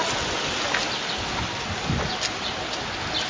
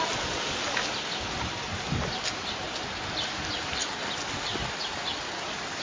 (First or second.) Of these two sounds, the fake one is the second